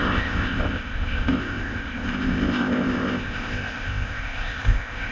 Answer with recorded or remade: remade